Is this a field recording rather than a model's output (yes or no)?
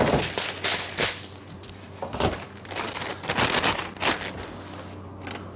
yes